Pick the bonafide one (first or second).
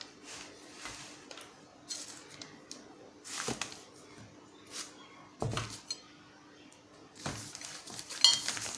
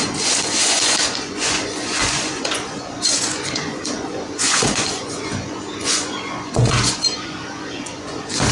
first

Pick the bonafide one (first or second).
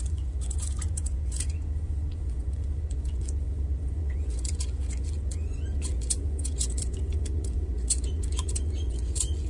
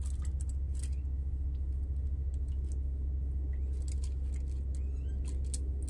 second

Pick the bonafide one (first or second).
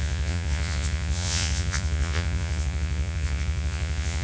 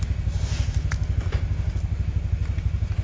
second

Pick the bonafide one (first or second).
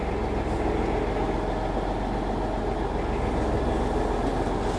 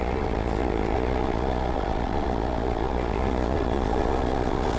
first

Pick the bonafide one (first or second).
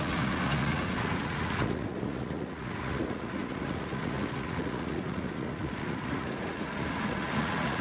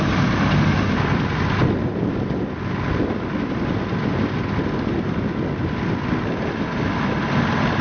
second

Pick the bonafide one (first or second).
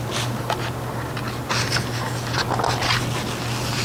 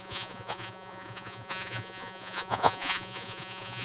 first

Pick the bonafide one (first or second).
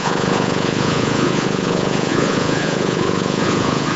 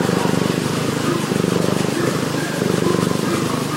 second